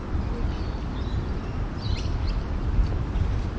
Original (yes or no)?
yes